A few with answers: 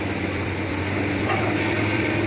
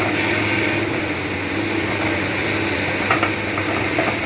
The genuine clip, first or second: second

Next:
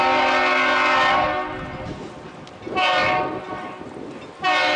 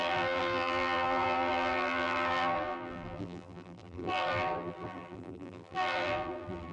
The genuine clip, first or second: first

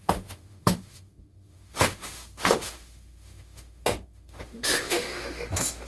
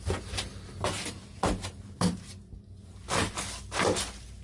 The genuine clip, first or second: second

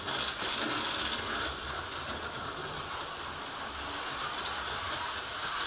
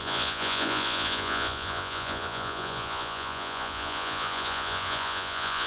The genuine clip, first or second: first